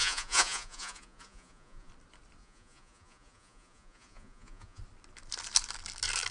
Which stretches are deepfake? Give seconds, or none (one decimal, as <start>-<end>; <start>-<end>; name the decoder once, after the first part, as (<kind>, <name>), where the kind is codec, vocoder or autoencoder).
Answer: 0.0-1.9 (vocoder, Vocos); 2.4-4.8

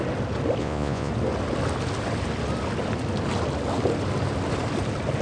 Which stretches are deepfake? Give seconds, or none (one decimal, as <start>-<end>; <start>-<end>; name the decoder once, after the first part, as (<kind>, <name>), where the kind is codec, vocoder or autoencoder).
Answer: 0.6-1.1 (vocoder, Vocos)

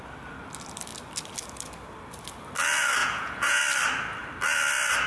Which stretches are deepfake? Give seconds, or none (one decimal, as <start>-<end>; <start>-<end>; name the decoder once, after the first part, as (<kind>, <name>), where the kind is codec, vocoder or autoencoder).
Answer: 3.0-3.6 (vocoder, Vocos)

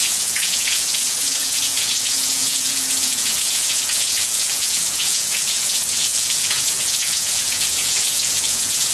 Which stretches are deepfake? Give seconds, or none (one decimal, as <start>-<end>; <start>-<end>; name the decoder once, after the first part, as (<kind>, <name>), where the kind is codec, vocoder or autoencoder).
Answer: 0.0-8.9 (vocoder, Vocos)

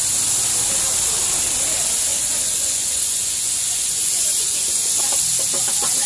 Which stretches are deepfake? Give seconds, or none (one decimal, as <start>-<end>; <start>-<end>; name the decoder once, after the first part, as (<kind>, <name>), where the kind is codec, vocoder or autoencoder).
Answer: 2.1-5.0 (vocoder, Vocos)